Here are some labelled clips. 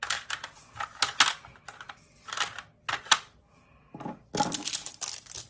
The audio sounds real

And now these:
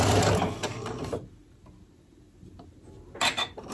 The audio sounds real